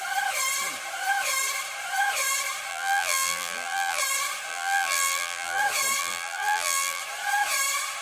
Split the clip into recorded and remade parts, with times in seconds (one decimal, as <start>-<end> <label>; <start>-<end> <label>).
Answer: 0.0-2.7 recorded; 2.7-4.0 remade; 4.0-4.5 recorded; 4.5-5.6 remade; 5.6-6.0 recorded; 6.0-7.0 remade; 7.0-8.0 recorded